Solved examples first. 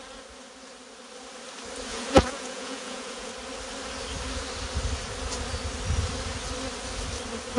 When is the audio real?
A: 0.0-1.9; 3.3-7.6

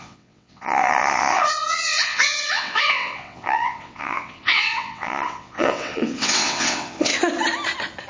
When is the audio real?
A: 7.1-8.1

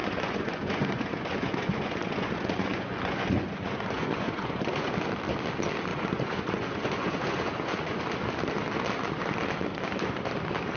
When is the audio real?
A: 4.9-5.9; 8.0-10.8

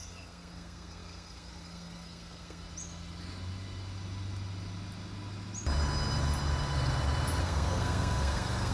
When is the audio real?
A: 2.6-7.4